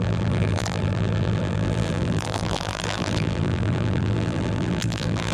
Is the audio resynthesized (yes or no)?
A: yes